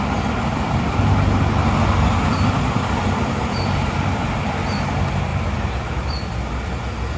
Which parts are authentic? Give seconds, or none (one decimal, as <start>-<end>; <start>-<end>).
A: 0.0-7.2